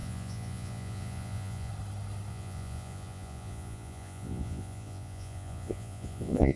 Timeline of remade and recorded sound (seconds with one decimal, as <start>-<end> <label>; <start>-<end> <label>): 0.0-1.7 remade; 1.7-2.3 recorded; 2.3-6.6 remade